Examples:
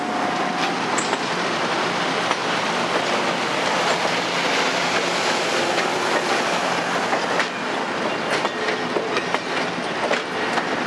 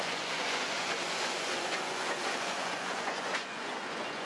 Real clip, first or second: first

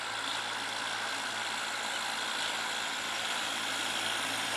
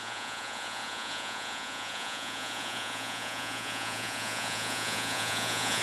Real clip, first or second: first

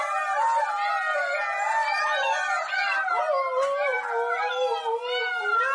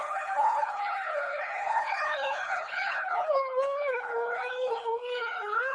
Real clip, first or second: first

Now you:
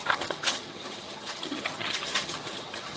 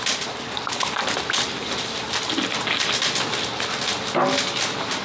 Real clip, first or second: second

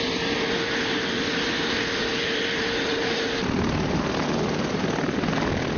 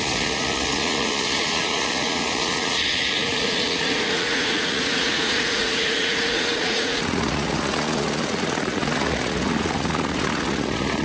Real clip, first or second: first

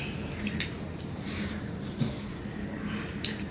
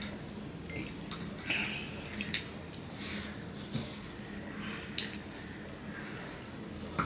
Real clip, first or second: second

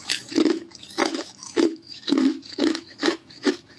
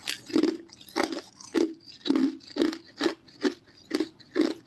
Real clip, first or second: second